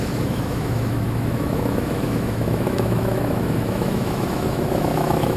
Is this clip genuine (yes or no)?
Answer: no